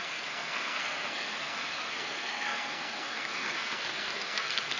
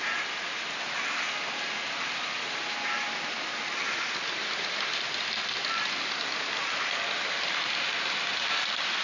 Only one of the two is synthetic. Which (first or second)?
first